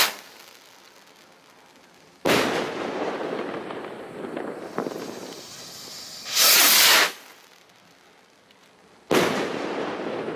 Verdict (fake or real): real